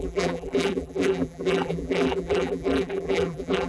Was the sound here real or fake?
fake